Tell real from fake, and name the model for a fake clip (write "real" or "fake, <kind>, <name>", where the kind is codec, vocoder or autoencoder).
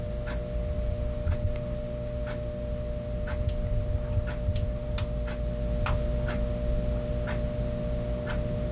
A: real